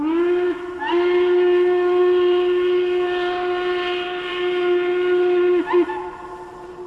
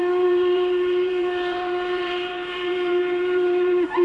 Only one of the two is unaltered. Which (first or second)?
first